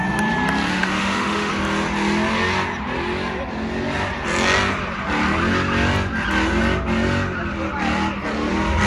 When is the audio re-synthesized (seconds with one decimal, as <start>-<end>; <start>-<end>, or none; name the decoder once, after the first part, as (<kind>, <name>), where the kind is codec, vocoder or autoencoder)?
0.7-1.5 (autoencoder, DAC-VAE)